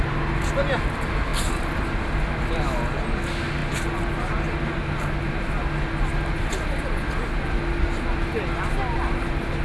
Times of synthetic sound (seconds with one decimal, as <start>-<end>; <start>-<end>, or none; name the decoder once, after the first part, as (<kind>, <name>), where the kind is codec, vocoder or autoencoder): none